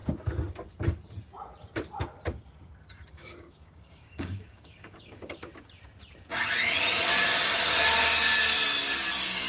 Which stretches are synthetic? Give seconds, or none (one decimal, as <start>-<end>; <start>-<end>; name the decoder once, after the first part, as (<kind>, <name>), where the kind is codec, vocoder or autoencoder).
3.1-5.5 (codec, DAC); 9.1-9.5